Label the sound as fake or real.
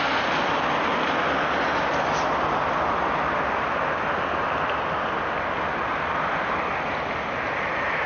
real